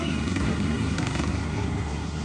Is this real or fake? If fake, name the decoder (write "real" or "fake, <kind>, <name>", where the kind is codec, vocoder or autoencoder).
fake, codec, SNAC